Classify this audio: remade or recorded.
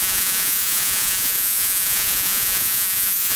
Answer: remade